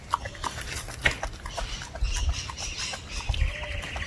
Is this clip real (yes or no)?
no